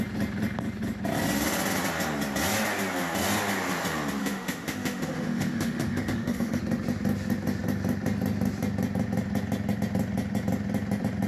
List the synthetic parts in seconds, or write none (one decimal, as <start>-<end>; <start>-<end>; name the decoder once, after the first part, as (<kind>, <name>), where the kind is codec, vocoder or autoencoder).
4.2-6.6 (autoencoder, DAC-VAE)